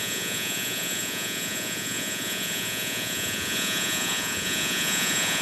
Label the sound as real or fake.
fake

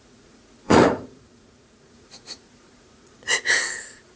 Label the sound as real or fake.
fake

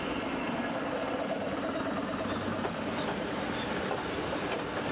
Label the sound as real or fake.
real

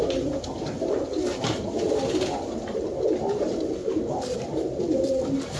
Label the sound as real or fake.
real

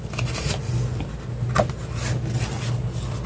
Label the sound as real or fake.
real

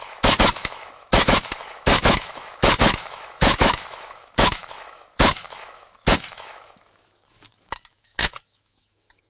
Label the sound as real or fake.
fake